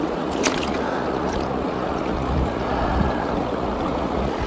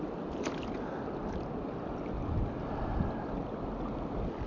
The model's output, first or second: first